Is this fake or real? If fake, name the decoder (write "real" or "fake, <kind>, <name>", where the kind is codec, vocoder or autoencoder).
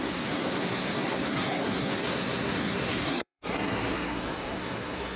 fake, codec, SNAC